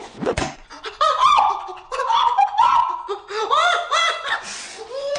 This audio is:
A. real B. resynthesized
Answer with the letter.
B